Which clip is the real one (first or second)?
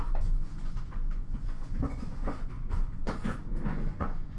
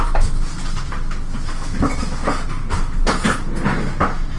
second